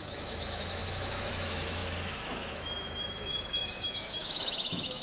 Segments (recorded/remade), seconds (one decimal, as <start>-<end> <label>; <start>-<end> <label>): 0.0-5.0 remade